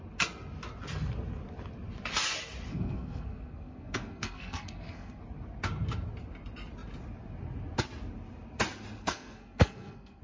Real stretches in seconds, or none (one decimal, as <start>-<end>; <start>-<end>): 0.0-2.7; 5.2-9.0